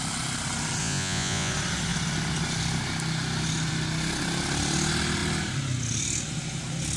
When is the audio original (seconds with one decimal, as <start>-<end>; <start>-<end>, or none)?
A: 0.0-0.8; 1.5-7.0